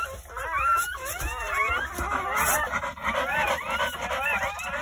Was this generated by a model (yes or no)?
no